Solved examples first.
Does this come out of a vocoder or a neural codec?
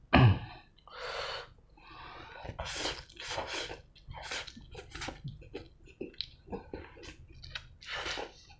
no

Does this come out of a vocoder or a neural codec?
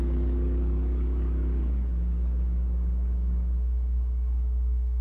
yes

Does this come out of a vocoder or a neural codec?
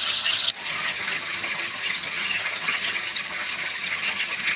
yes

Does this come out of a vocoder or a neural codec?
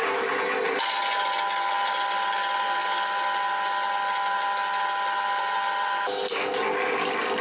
no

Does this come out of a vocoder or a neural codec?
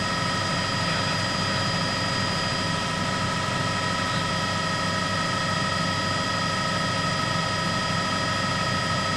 no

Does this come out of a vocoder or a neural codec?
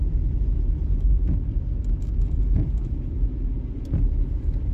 no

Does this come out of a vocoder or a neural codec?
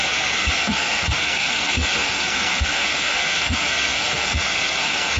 yes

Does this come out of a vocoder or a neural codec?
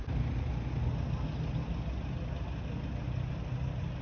no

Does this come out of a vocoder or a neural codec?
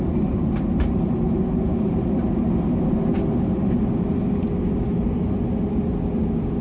no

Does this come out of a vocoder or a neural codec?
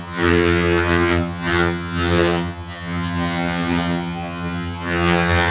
yes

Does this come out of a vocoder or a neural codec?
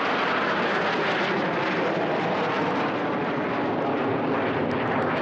no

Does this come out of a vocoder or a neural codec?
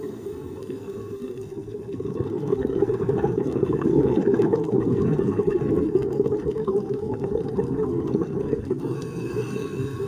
yes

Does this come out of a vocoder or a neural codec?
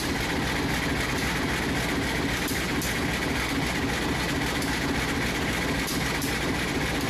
no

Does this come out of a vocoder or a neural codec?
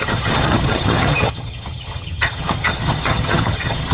yes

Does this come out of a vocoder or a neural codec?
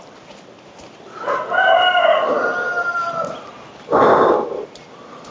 no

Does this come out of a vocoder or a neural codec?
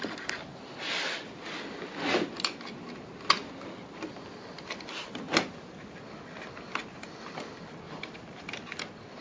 no